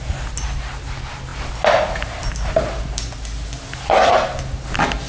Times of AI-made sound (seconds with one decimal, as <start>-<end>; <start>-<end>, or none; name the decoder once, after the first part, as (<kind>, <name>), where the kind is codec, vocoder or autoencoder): none